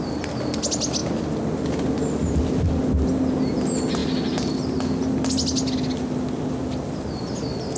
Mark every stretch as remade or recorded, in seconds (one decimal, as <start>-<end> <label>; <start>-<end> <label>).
0.0-7.8 recorded